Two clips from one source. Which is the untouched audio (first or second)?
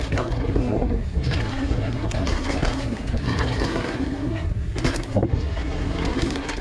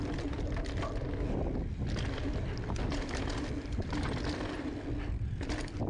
second